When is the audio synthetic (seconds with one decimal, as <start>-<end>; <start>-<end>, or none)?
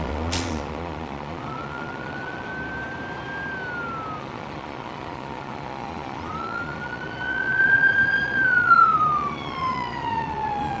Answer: 0.0-2.5; 4.2-10.8